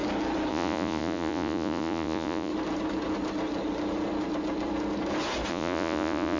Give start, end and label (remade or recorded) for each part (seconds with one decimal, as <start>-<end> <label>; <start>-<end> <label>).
0.0-0.5 recorded; 0.5-2.5 remade; 2.5-5.5 recorded; 5.5-6.4 remade